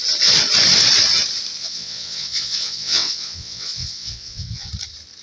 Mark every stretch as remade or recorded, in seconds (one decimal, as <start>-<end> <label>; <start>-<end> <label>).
0.0-1.6 recorded; 1.6-4.7 remade; 4.7-5.2 recorded